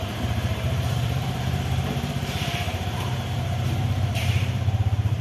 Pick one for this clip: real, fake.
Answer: fake